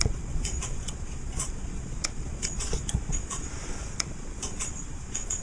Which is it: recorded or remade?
remade